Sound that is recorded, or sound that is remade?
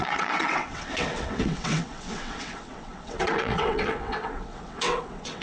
remade